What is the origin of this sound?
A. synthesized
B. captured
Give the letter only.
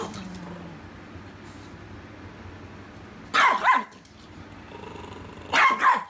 B